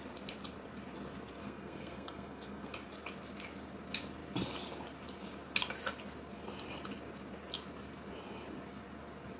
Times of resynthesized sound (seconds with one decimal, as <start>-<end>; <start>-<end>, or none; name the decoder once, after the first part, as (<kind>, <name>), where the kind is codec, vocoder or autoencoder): 1.4-2.7 (codec, SNAC)